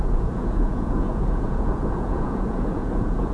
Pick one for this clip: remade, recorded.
remade